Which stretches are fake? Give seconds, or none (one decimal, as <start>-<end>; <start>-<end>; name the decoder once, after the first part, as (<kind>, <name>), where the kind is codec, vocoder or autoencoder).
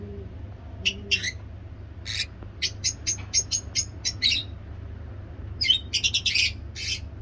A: none